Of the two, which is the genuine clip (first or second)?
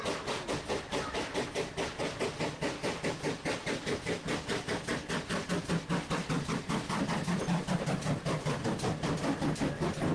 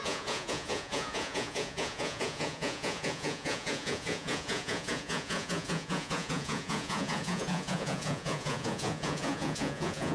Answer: first